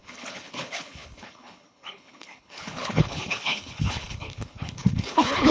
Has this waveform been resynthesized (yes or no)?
yes